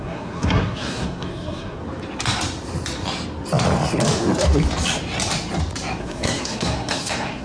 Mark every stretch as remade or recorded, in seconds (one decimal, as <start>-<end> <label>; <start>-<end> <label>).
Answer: 0.0-1.8 remade; 1.8-6.0 recorded; 6.0-7.4 remade